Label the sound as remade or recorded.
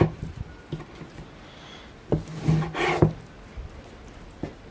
recorded